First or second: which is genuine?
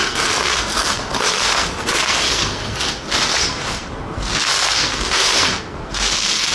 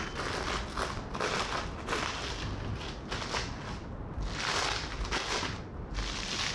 second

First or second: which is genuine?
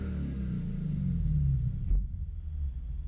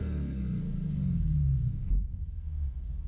first